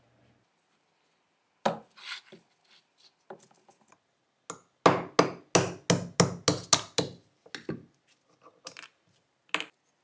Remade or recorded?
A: recorded